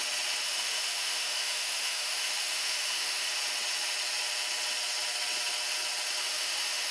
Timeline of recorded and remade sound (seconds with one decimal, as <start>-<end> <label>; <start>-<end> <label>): 0.0-0.4 recorded; 0.4-3.3 remade; 3.3-6.2 recorded; 6.2-6.9 remade